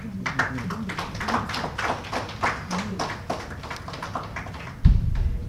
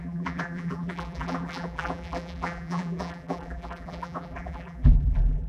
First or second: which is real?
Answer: first